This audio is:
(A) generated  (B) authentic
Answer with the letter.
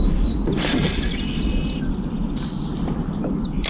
B